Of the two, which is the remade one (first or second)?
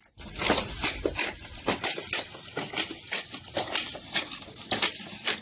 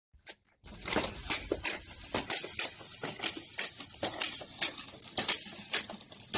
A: first